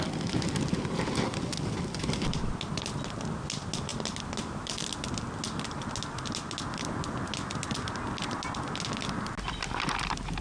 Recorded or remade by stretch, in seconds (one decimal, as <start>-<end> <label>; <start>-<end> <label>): 0.0-10.4 recorded